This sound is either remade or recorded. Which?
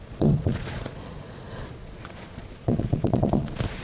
remade